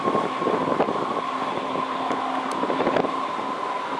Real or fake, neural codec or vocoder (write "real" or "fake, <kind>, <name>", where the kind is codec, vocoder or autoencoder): real